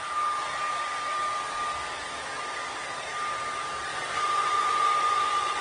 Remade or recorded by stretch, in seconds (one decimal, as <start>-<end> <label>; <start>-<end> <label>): 0.0-3.9 recorded; 3.9-5.6 remade